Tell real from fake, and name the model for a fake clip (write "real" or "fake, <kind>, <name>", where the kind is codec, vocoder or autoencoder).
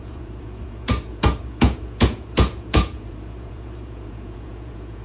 fake, vocoder, Vocos